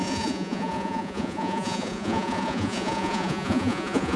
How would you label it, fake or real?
fake